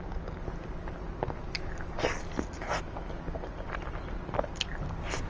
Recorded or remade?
recorded